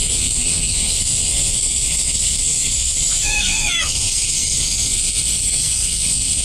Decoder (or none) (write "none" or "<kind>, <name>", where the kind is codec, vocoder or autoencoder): codec, SNAC